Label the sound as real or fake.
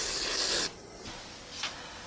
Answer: real